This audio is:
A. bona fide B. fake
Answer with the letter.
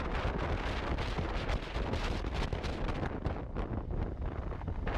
A